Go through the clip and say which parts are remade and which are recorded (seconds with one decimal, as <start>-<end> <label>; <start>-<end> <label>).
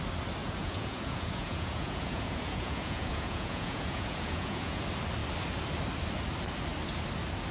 0.0-0.4 recorded; 0.4-4.8 remade; 4.8-7.5 recorded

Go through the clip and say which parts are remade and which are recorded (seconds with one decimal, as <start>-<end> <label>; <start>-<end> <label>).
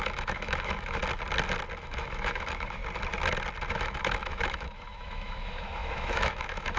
0.0-1.0 remade; 1.0-1.8 recorded; 1.8-2.8 remade; 2.8-3.7 recorded; 3.7-6.8 remade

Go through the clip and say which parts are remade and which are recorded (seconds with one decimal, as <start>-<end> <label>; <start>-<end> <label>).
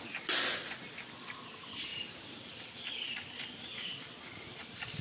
0.0-5.0 recorded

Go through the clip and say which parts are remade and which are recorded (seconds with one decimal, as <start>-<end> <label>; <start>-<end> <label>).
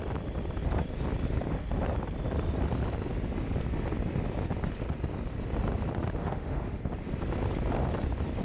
0.0-6.2 recorded; 6.2-6.8 remade; 6.8-8.4 recorded